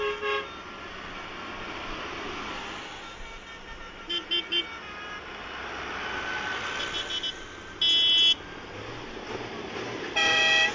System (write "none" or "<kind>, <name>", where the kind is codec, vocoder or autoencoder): none